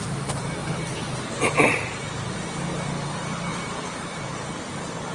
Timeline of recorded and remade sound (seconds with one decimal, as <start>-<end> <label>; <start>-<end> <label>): 0.0-3.5 recorded; 3.5-4.2 remade; 4.2-5.1 recorded

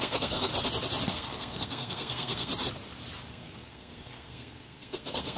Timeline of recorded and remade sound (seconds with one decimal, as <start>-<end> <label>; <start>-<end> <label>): 0.0-0.5 remade; 0.5-1.1 recorded; 1.1-2.5 remade; 2.5-3.3 recorded; 3.3-5.4 remade

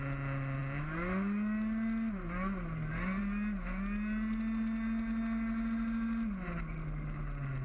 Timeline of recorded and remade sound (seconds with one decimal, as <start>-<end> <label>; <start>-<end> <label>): 0.0-7.6 recorded

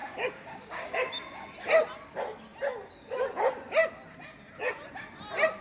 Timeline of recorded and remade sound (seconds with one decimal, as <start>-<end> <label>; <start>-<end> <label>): 0.0-1.1 remade; 1.1-5.6 recorded

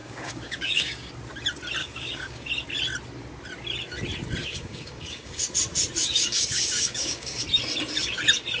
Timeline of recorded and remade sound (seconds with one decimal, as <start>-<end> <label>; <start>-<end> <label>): 0.0-1.1 remade; 1.1-1.8 recorded; 1.8-2.5 remade; 2.5-4.4 recorded; 4.4-5.4 remade; 5.4-6.0 recorded; 6.0-7.4 remade; 7.4-8.6 recorded